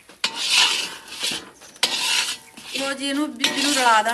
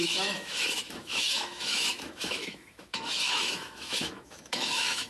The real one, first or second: first